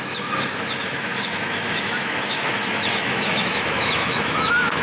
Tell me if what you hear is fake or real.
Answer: fake